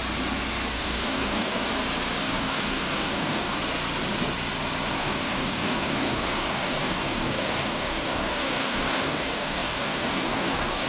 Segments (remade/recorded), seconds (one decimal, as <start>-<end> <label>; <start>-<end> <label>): 0.0-0.7 recorded; 0.7-1.7 remade; 1.7-2.2 recorded; 2.2-3.6 remade; 3.6-5.0 recorded; 5.0-10.9 remade